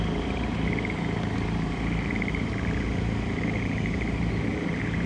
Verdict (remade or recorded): remade